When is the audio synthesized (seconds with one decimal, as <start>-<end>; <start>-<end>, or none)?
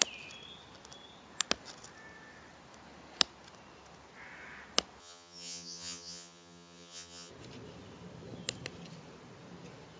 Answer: 5.0-7.3